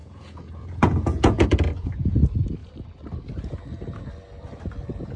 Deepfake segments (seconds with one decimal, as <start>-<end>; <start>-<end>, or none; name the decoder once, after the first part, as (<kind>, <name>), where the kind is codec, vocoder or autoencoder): 0.0-2.2 (vocoder, Vocos)